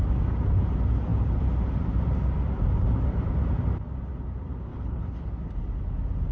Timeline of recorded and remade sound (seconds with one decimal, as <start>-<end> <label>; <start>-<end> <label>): 0.0-4.7 recorded; 4.7-5.3 remade; 5.3-6.3 recorded